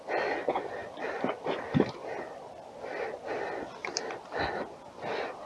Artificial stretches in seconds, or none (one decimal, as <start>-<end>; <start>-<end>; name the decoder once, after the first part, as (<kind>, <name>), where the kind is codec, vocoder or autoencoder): none